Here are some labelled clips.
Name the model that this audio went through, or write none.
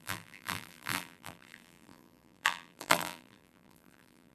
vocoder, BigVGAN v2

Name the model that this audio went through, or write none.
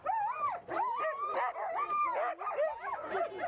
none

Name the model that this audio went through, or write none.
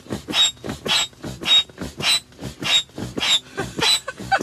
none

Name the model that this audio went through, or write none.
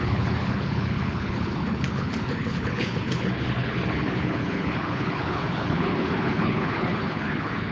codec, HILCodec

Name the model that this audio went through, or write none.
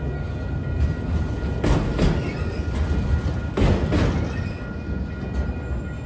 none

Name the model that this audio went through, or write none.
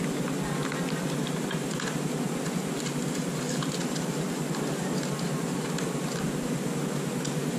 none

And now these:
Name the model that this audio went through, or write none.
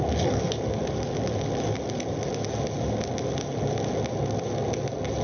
none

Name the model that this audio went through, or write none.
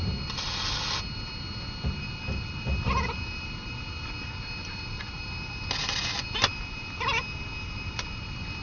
none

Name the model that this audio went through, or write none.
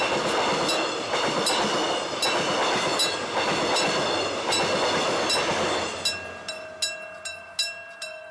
none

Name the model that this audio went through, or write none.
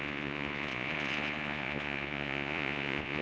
vocoder, Vocos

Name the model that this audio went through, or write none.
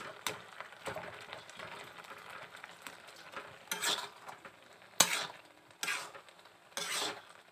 none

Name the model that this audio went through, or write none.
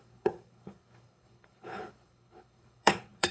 codec, HILCodec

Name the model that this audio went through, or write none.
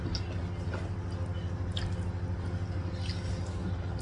none